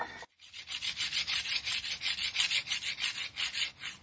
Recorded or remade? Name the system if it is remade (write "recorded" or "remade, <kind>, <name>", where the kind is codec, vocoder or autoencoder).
recorded